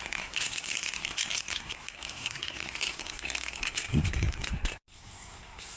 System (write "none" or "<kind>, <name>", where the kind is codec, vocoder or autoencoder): codec, SNAC